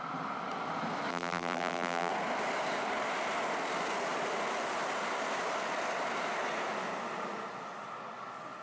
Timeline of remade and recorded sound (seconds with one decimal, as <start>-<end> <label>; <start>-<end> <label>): 0.0-1.1 recorded; 1.1-2.1 remade; 2.1-8.6 recorded